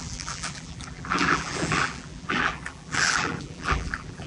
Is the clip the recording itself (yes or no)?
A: no